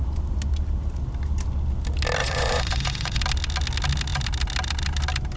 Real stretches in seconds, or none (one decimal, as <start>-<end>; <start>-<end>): 0.0-2.2; 3.2-5.4